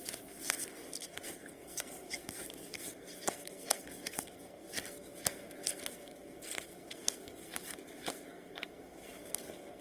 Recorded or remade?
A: remade